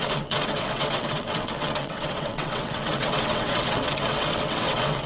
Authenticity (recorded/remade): remade